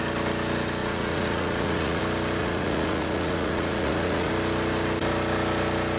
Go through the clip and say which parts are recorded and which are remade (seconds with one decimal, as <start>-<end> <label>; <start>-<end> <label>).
0.0-0.8 recorded; 0.8-2.0 remade; 2.0-2.4 recorded; 2.4-4.3 remade; 4.3-6.0 recorded